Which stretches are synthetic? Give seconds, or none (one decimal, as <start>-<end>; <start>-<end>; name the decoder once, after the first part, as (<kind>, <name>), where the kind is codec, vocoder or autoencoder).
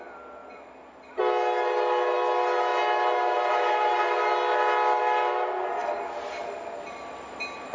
none